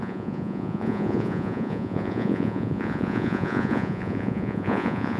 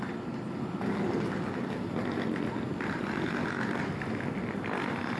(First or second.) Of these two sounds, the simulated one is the first